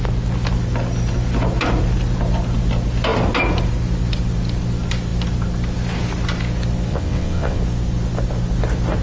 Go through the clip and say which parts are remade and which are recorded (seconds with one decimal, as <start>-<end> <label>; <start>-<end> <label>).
0.0-6.9 recorded; 6.9-7.6 remade; 7.6-9.0 recorded